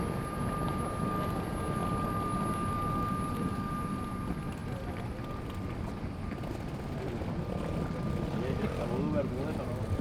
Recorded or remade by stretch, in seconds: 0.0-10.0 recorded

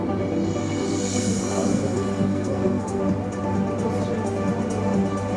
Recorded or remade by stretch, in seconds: 0.0-0.6 recorded; 0.6-3.0 remade; 3.0-5.4 recorded

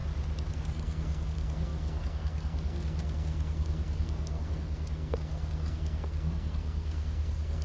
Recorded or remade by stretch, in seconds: 0.0-0.5 recorded; 0.5-7.6 remade

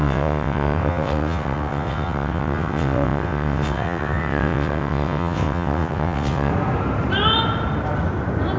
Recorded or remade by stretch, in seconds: 0.0-6.5 remade; 6.5-8.6 recorded

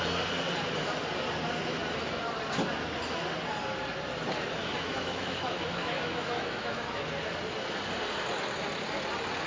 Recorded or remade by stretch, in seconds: 0.0-4.6 recorded; 4.6-7.0 remade; 7.0-9.5 recorded

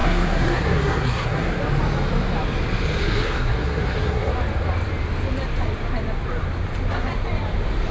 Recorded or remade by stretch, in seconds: 0.0-1.6 remade; 1.6-3.0 recorded; 3.0-4.3 remade; 4.3-7.9 recorded

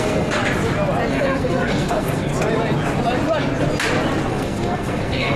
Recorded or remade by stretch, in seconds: 0.0-0.4 remade; 0.4-1.1 recorded; 1.1-2.3 remade; 2.3-4.3 recorded; 4.3-5.4 remade

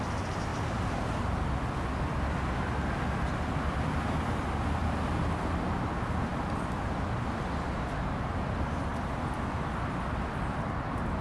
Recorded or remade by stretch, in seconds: 0.0-11.2 recorded